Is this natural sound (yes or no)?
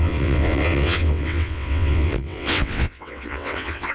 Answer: no